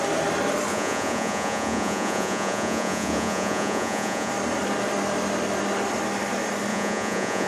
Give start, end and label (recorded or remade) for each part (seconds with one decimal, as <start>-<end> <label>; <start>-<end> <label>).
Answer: 0.0-0.7 recorded; 0.7-4.3 remade; 4.3-6.7 recorded; 6.7-7.5 remade